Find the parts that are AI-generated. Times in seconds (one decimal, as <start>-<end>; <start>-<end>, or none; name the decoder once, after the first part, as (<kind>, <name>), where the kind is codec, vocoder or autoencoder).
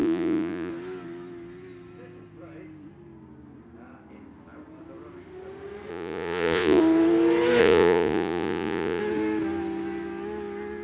0.0-0.7 (vocoder, Vocos); 5.9-6.8; 7.6-9.0